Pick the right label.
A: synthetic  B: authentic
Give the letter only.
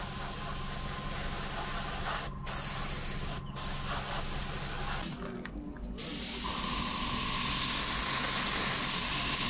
B